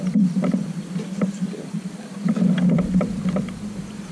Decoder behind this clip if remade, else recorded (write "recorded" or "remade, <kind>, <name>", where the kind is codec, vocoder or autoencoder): remade, vocoder, BigVGAN v2